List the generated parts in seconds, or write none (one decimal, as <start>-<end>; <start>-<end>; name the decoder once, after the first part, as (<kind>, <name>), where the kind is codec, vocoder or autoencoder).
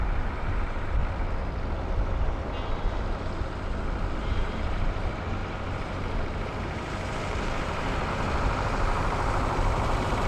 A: 0.0-1.0 (vocoder, BigVGAN v2); 4.1-10.3